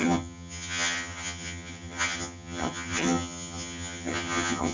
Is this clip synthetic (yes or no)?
yes